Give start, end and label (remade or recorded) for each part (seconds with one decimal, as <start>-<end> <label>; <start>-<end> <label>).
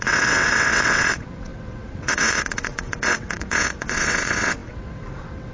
0.0-5.5 remade